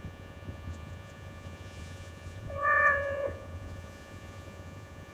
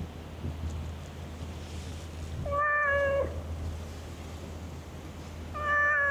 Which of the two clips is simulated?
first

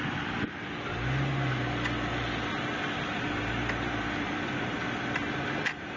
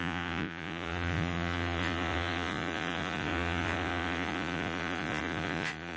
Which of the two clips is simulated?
second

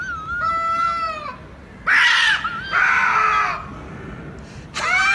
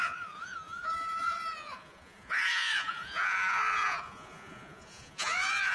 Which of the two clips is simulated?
second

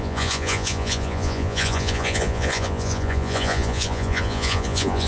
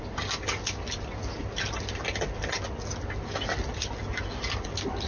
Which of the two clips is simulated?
first